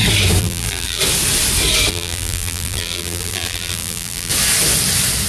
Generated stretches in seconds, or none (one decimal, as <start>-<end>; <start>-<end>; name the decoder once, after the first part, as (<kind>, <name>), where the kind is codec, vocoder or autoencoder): 0.4-1.0 (vocoder, BigVGAN v2); 1.9-4.3